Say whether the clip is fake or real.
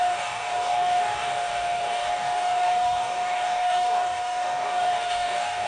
fake